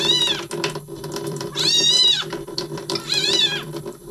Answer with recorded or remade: remade